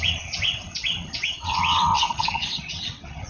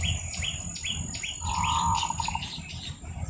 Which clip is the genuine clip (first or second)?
second